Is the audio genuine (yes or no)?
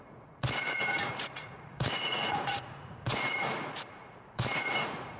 no